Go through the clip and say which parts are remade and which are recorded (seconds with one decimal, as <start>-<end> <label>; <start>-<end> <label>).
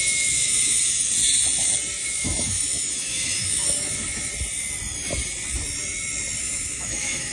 0.0-1.1 remade; 1.1-2.0 recorded; 2.0-4.3 remade; 4.3-6.4 recorded; 6.4-7.3 remade